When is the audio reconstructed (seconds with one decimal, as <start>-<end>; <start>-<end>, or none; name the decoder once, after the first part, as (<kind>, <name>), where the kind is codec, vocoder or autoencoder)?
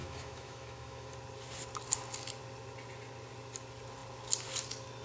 0.0-1.1 (autoencoder, DAC-VAE)